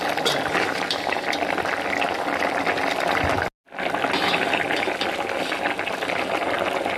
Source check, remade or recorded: recorded